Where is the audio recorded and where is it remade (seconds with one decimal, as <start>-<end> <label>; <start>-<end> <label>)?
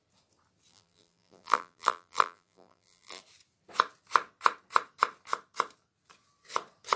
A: 0.0-0.7 recorded; 0.7-3.2 remade; 3.2-7.0 recorded